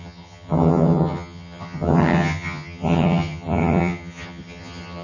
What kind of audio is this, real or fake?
fake